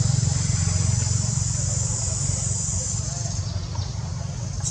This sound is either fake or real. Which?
real